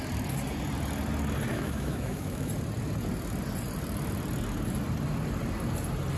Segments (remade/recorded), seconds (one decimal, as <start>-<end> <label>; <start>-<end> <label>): 0.0-1.5 recorded; 1.5-2.5 remade; 2.5-6.2 recorded